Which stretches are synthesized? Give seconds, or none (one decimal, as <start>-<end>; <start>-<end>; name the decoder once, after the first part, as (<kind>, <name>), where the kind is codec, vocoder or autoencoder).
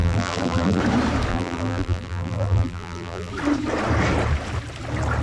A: 0.0-0.8 (vocoder, BigVGAN v2); 1.3-3.3